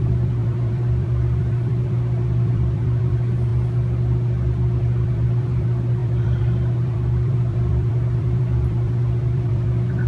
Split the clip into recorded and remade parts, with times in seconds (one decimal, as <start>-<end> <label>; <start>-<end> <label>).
0.0-3.5 remade; 3.5-4.8 recorded; 4.8-10.1 remade